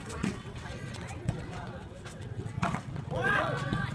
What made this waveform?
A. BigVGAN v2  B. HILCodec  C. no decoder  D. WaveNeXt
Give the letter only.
D